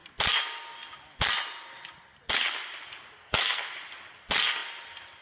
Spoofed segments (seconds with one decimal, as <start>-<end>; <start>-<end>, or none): 3.2-3.7